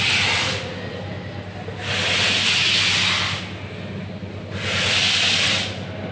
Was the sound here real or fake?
real